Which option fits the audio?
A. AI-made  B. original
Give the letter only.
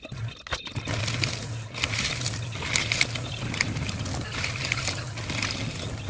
B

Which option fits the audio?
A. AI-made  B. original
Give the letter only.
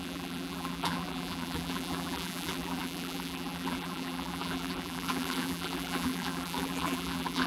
A